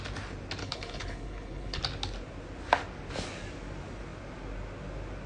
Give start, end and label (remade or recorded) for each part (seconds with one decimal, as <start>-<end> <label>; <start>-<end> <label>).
0.0-0.6 recorded; 0.6-1.8 remade; 1.8-5.3 recorded

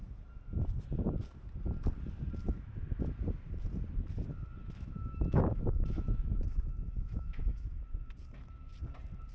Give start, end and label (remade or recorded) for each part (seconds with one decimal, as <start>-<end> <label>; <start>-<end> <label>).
0.0-2.4 recorded; 2.4-3.1 remade; 3.1-4.6 recorded; 4.6-7.8 remade; 7.8-9.3 recorded

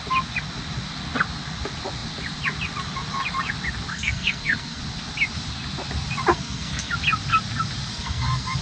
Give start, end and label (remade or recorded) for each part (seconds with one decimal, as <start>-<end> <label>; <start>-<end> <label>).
0.0-3.9 recorded; 3.9-4.8 remade; 4.8-6.3 recorded; 6.3-6.9 remade; 6.9-7.9 recorded; 7.9-8.6 remade

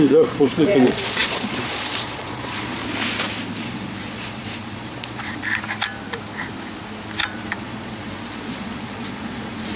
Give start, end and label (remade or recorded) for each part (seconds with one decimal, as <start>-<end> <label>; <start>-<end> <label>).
0.0-2.8 remade; 2.8-3.6 recorded; 3.6-5.4 remade; 5.4-7.3 recorded; 7.3-9.8 remade